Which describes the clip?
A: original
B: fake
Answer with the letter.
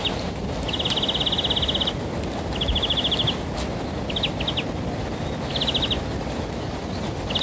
A